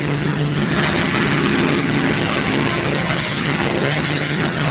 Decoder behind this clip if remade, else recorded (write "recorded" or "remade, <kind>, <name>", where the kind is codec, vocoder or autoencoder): remade, vocoder, HiFi-GAN